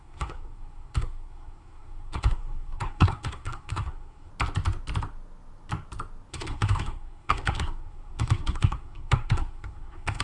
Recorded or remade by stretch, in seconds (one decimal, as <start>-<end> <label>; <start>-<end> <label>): 0.0-4.3 remade; 4.3-6.3 recorded; 6.3-10.2 remade